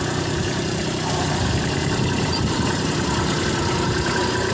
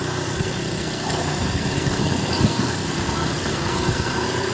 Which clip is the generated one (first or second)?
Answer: second